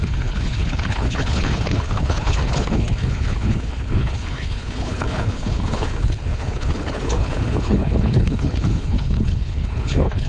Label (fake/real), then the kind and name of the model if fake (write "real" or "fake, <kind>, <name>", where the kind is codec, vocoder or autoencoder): fake, codec, HILCodec